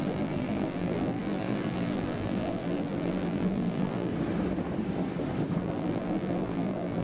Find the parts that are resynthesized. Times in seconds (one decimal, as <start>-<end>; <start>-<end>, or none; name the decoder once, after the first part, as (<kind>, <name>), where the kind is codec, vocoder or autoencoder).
0.0-4.1 (vocoder, BigVGAN v2); 5.6-7.0